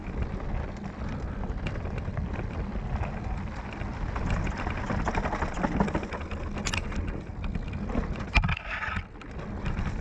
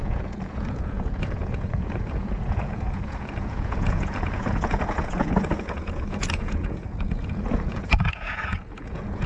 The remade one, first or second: second